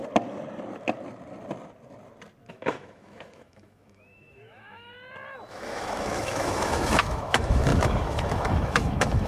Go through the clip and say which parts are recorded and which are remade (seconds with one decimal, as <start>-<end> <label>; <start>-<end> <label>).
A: 0.0-2.5 recorded; 2.5-4.9 remade; 4.9-5.5 recorded; 5.5-9.3 remade